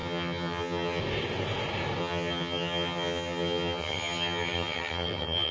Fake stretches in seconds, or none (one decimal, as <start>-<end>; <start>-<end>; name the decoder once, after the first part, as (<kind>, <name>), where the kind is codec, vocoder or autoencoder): 0.0-1.0 (vocoder, HiFi-GAN); 2.0-5.5